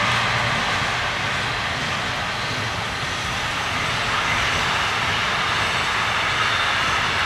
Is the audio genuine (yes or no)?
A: yes